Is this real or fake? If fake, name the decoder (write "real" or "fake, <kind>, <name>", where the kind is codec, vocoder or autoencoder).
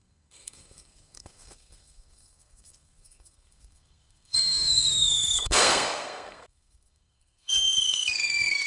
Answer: fake, codec, SNAC